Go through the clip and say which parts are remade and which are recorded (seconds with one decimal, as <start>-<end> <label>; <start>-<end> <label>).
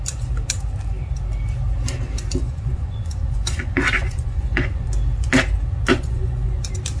0.0-2.4 recorded; 2.4-4.9 remade; 4.9-5.9 recorded; 5.9-6.6 remade; 6.6-7.0 recorded